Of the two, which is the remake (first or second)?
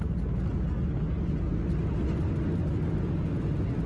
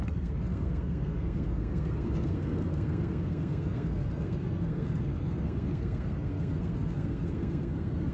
second